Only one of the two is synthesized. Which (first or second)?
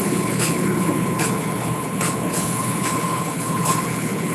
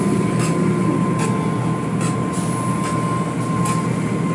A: first